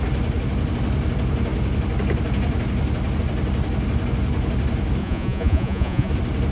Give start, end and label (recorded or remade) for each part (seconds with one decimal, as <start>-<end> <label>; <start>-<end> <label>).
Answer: 0.0-5.0 recorded; 5.0-6.1 remade; 6.1-6.5 recorded